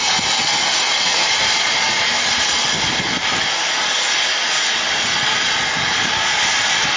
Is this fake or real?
real